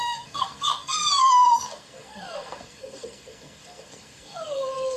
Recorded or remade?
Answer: remade